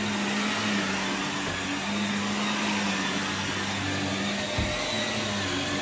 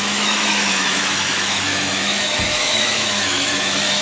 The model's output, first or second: second